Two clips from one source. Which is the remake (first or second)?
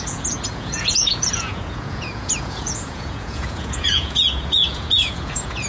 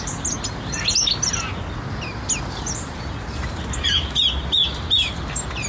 first